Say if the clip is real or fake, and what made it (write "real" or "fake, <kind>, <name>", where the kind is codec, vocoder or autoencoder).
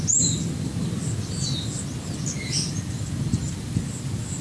real